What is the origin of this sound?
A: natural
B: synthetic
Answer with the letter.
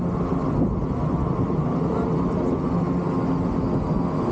A